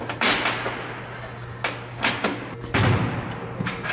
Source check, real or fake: real